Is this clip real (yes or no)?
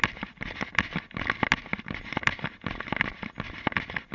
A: yes